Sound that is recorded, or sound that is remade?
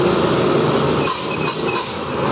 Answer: recorded